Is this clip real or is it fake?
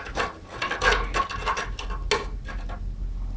real